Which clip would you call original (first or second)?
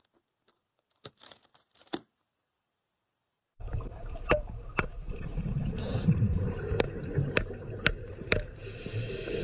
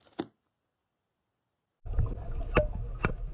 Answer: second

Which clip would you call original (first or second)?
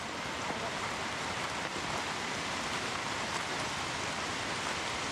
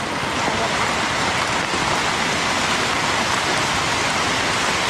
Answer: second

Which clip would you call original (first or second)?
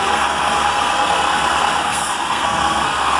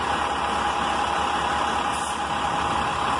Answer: second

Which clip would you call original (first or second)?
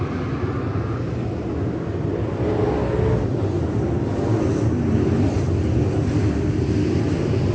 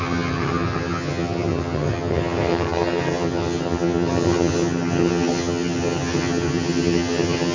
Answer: first